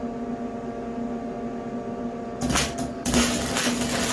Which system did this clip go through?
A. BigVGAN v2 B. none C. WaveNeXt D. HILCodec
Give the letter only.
B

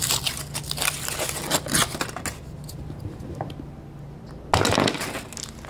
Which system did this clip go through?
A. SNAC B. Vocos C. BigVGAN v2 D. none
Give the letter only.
D